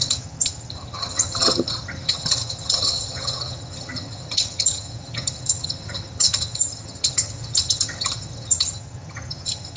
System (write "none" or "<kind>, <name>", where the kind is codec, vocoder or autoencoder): vocoder, HiFi-GAN